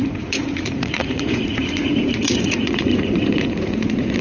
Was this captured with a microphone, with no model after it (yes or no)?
no